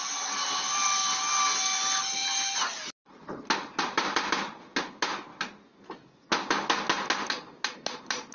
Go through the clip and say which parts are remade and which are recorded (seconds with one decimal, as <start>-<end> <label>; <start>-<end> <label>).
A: 0.0-8.3 recorded